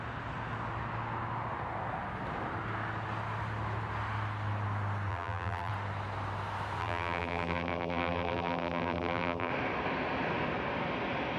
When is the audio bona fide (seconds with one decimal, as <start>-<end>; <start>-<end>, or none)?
0.0-5.1; 5.7-6.8; 9.5-11.4